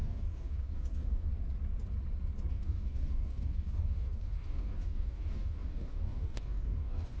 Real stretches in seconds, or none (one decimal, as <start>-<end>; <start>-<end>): 1.3-2.5